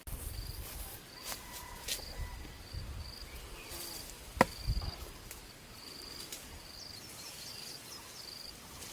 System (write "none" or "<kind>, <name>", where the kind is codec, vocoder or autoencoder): none